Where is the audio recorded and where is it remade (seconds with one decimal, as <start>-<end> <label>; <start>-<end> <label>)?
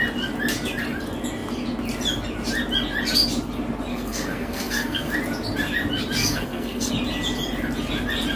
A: 0.0-3.9 recorded; 3.9-5.1 remade; 5.1-6.2 recorded; 6.2-6.9 remade; 6.9-8.4 recorded